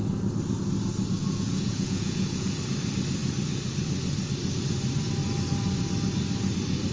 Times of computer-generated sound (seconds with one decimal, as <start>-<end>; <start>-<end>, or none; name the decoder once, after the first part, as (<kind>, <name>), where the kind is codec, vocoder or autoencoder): 1.2-2.6 (vocoder, Vocos)